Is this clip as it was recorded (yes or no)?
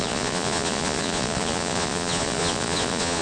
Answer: no